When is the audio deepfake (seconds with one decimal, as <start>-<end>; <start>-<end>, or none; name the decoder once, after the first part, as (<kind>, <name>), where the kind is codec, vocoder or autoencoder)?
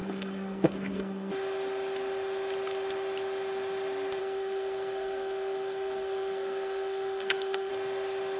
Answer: 0.0-1.3 (codec, SNAC); 4.2-7.7